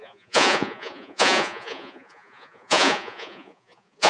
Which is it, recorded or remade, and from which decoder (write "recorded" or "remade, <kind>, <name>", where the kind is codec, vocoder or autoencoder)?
remade, vocoder, Vocos